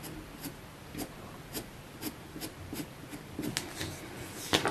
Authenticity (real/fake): real